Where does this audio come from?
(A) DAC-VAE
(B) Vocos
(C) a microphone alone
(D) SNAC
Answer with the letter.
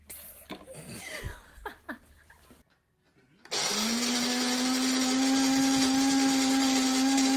C